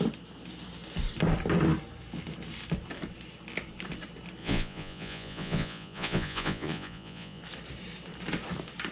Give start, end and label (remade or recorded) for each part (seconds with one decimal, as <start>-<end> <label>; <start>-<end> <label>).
0.0-4.4 recorded; 4.4-7.4 remade; 7.4-8.9 recorded